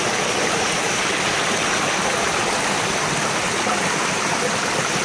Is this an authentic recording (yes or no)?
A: yes